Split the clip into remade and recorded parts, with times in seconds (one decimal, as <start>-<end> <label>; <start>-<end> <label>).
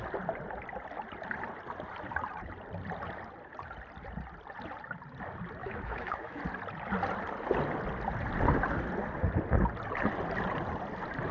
0.0-5.6 recorded; 5.6-6.4 remade; 6.4-11.3 recorded